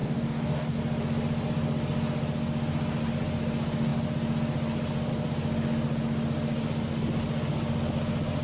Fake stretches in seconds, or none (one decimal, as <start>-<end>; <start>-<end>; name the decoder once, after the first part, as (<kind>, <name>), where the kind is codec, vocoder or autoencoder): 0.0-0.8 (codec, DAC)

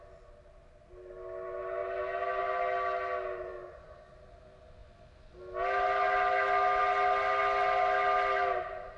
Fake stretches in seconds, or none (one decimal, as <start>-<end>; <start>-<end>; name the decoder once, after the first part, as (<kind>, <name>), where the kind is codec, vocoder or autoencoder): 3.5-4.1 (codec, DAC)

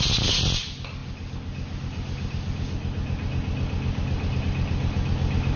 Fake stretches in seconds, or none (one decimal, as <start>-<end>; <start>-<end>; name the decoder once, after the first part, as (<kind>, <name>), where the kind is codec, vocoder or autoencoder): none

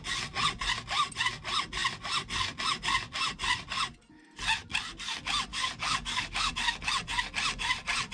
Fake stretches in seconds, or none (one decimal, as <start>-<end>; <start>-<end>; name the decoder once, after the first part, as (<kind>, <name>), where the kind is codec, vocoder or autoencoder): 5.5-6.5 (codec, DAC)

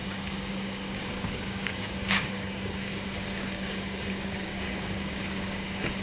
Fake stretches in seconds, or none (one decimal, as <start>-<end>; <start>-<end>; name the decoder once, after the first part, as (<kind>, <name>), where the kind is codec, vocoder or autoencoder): 0.0-6.0 (codec, DAC)